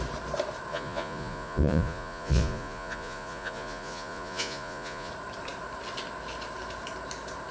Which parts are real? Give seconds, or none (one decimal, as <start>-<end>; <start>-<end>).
0.0-0.7; 5.1-7.5